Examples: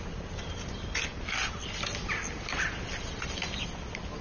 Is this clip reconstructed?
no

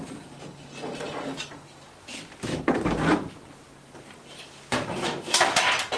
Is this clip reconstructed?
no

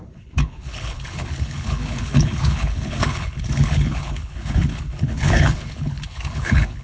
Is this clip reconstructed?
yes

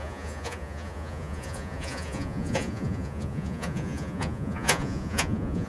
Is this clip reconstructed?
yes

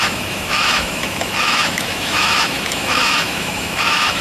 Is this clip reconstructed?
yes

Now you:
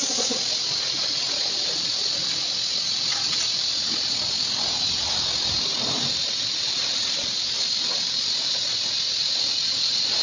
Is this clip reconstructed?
no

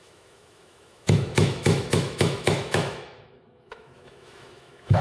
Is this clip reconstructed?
yes